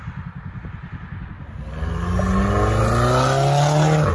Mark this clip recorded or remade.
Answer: recorded